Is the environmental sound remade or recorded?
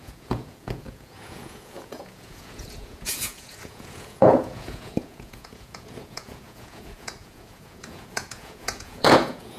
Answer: remade